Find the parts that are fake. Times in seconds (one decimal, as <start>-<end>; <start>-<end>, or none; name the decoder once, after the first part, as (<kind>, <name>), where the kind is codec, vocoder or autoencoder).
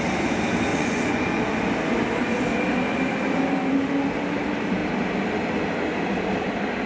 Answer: 0.7-1.4 (vocoder, Vocos)